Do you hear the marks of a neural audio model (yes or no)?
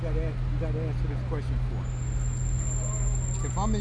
no